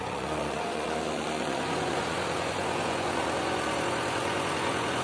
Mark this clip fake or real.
fake